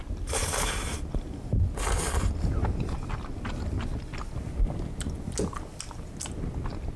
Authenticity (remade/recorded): recorded